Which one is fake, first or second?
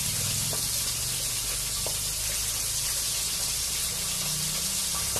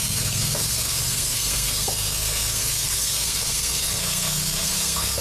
second